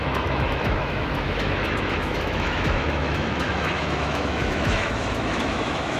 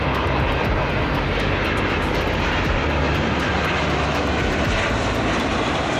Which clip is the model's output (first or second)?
first